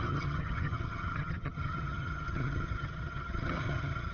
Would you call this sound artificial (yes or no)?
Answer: yes